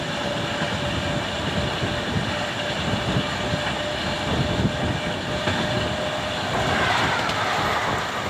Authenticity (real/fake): real